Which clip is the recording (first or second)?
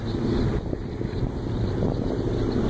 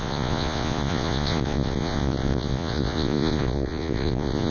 first